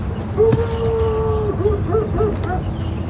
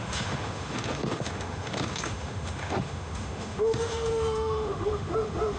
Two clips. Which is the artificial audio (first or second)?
second